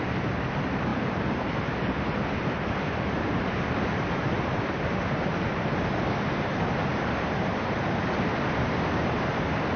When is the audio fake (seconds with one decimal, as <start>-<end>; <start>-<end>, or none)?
0.9-6.0; 6.8-8.4